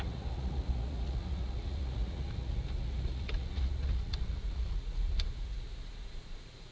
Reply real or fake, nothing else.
fake